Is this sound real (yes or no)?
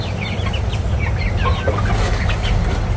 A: yes